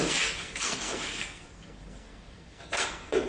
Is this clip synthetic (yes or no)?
yes